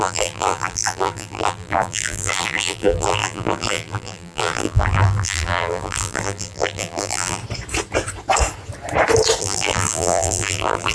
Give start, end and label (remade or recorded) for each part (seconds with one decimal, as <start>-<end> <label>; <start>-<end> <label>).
0.0-7.4 remade; 7.4-9.4 recorded; 9.4-10.9 remade